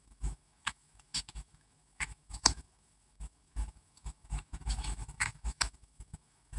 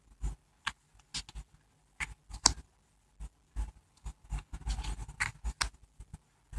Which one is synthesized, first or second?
first